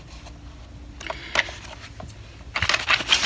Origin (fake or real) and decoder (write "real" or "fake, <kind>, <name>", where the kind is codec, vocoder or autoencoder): real